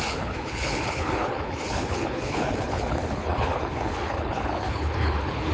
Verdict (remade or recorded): remade